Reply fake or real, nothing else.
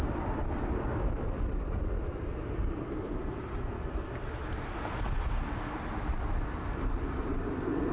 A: real